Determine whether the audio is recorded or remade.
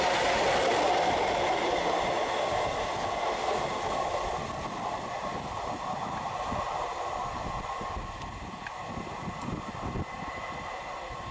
recorded